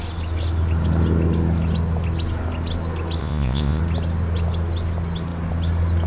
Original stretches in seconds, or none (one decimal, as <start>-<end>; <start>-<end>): 0.0-3.2; 3.8-6.1